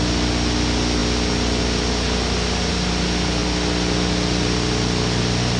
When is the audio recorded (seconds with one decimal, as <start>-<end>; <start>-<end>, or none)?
0.0-5.6